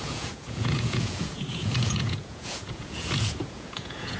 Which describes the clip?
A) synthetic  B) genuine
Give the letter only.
A